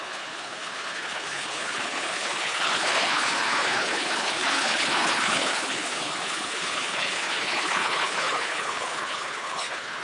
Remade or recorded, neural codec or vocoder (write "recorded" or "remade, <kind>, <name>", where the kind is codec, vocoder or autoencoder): remade, codec, HILCodec